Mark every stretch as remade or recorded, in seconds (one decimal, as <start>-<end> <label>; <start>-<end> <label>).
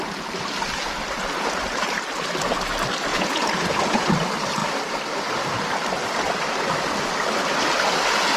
0.0-3.1 recorded; 3.1-4.0 remade; 4.0-8.4 recorded